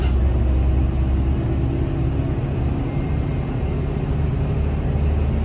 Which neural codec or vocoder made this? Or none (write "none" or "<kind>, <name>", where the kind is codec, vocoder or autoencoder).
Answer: none